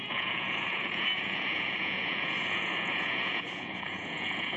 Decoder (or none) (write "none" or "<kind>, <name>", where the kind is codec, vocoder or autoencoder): vocoder, Vocos